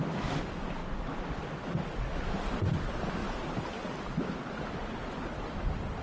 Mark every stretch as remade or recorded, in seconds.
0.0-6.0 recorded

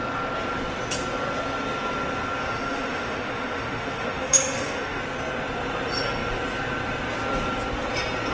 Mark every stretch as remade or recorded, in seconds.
0.0-2.4 recorded; 2.4-5.0 remade; 5.0-8.3 recorded

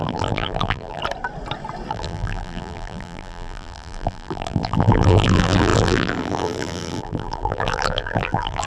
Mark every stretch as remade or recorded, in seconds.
0.0-1.0 remade; 1.0-1.9 recorded; 1.9-8.7 remade